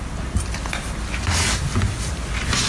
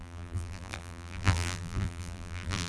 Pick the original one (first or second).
first